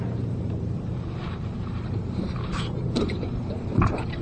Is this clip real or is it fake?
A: fake